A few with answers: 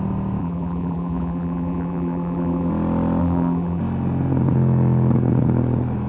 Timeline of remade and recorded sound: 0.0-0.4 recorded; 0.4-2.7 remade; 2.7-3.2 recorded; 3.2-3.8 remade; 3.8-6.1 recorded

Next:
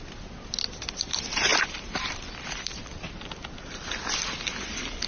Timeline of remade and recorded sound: 0.0-5.1 remade